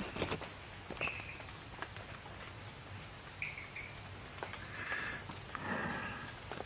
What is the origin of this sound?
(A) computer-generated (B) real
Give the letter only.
B